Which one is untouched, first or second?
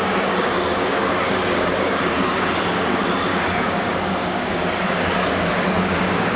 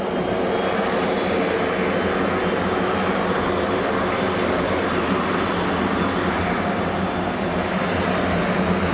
second